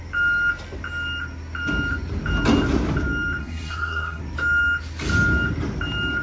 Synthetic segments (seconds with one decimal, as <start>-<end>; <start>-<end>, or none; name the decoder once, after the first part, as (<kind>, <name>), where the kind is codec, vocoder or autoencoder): 3.4-4.2 (codec, SNAC)